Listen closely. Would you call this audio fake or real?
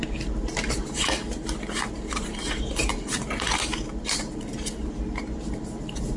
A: fake